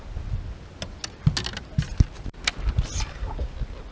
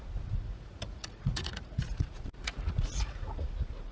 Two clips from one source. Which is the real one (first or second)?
first